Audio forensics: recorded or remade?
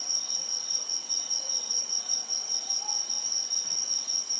remade